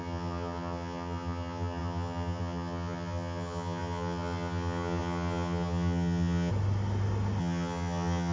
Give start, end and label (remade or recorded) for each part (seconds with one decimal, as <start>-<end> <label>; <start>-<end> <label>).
0.0-6.5 remade; 6.5-7.4 recorded; 7.4-8.3 remade